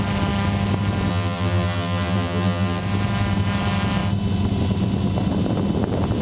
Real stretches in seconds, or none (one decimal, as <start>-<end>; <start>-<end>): 0.0-1.1; 2.8-6.2